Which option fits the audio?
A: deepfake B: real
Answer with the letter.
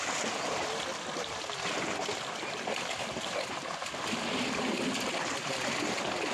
B